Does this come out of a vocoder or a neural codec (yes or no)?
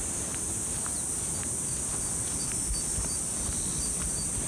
no